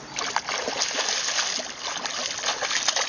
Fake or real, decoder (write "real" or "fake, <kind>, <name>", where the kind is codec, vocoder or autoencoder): real